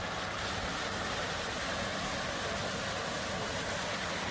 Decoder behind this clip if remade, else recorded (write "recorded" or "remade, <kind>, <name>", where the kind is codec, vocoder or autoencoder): recorded